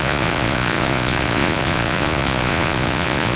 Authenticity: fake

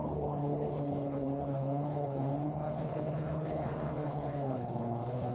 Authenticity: fake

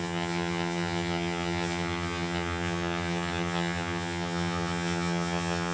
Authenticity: fake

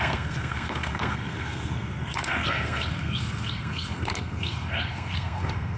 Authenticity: fake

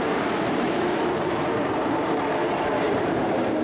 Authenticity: fake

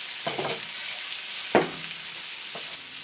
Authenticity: real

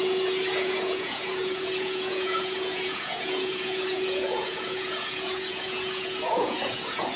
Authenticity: fake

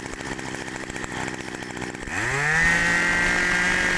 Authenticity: real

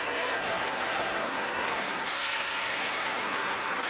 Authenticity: fake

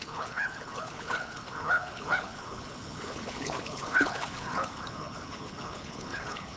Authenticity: fake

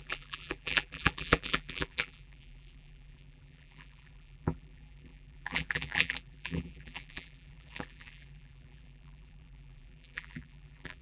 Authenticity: fake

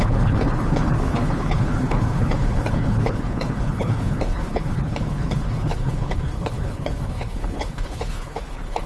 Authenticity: fake